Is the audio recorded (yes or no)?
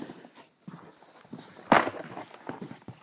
yes